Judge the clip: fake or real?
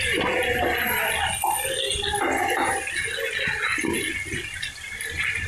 real